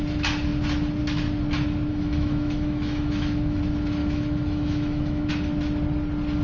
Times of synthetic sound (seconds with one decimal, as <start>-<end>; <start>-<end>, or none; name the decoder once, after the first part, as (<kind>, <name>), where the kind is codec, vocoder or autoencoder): 1.9-3.6 (autoencoder, DAC-VAE); 4.0-5.3